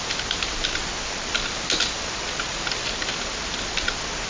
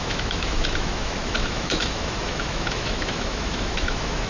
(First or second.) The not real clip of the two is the second